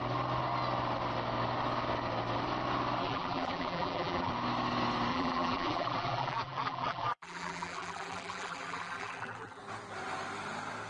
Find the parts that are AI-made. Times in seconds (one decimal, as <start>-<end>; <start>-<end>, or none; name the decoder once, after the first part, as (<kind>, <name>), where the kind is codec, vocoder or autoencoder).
3.0-4.3 (vocoder, BigVGAN v2); 5.1-9.6

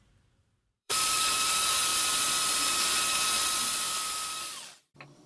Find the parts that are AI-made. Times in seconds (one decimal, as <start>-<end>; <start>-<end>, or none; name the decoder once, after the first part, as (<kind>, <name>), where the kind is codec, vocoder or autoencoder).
0.0-1.9 (vocoder, BigVGAN v2)

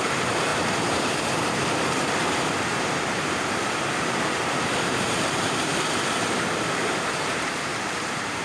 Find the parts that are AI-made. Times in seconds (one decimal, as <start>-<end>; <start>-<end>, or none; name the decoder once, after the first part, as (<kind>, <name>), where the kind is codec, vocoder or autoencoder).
0.0-8.4 (vocoder, BigVGAN v2)

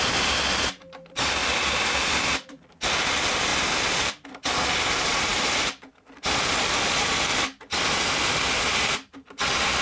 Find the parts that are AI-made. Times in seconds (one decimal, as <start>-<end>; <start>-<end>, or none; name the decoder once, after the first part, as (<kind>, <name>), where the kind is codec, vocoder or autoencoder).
none

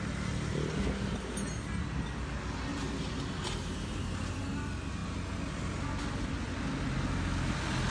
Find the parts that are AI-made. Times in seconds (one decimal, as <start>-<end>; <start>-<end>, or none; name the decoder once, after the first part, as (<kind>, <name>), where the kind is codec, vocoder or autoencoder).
2.7-4.4 (vocoder, BigVGAN v2)

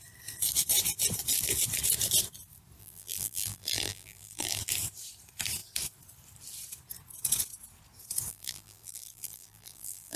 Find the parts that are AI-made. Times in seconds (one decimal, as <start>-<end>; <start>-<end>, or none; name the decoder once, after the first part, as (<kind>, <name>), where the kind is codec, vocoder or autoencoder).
2.8-4.6 (vocoder, BigVGAN v2); 8.3-10.2

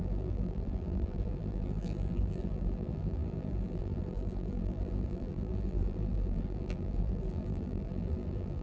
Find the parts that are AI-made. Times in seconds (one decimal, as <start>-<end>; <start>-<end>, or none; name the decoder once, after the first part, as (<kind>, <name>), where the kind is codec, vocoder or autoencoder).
0.0-8.6 (vocoder, BigVGAN v2)

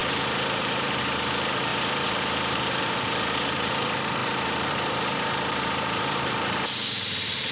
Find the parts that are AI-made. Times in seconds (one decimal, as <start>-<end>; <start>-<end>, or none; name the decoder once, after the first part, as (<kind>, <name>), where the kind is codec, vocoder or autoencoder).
0.0-7.5 (vocoder, BigVGAN v2)